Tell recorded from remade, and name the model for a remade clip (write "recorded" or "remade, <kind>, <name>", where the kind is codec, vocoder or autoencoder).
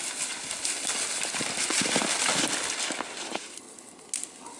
recorded